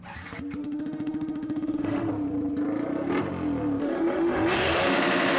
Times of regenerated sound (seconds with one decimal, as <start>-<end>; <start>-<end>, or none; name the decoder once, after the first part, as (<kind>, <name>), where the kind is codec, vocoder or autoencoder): 0.6-2.1 (autoencoder, DAC-VAE); 3.8-5.4